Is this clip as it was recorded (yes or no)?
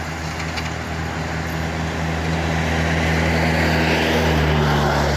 yes